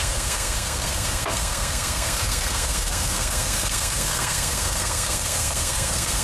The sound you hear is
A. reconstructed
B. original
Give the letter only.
A